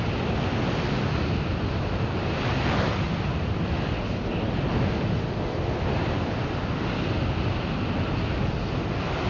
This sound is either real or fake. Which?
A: real